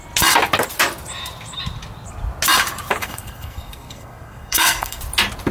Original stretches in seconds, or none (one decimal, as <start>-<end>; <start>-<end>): 0.0-3.0; 5.0-5.5